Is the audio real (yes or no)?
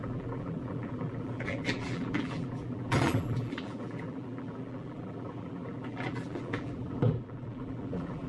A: no